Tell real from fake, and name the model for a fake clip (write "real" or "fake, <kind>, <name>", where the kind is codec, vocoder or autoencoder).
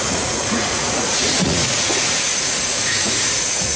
fake, vocoder, Vocos